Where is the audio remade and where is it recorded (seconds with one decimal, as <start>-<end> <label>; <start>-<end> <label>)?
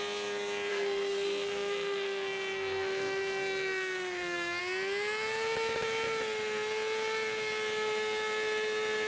0.0-0.7 recorded; 0.7-4.6 remade; 4.6-9.1 recorded